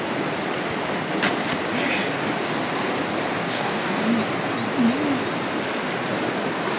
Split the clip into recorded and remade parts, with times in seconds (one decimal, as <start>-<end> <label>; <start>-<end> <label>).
0.0-3.4 recorded; 3.4-4.0 remade; 4.0-6.8 recorded